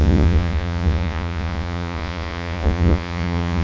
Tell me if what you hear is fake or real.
fake